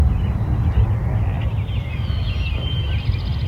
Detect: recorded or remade recorded